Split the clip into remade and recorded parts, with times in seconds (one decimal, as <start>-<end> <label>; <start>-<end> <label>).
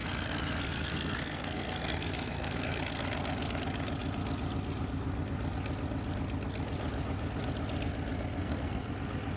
0.0-2.8 remade; 2.8-8.4 recorded; 8.4-8.9 remade; 8.9-9.4 recorded